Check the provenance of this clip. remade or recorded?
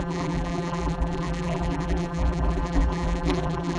remade